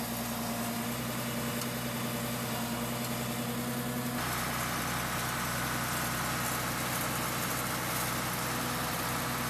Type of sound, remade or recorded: recorded